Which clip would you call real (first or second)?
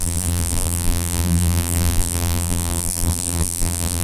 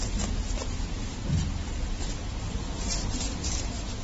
second